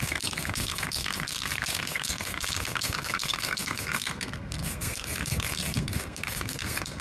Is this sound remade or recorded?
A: remade